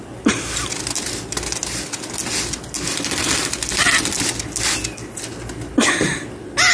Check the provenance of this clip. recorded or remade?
recorded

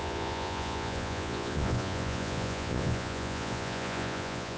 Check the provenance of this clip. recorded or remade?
remade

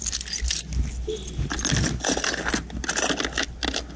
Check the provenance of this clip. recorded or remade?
recorded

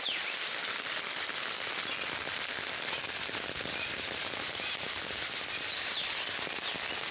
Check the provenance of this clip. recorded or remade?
recorded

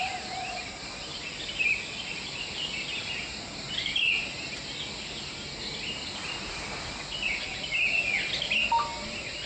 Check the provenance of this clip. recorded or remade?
recorded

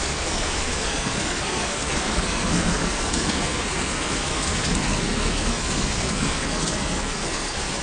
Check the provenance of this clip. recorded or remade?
remade